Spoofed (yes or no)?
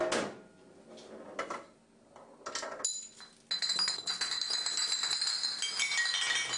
no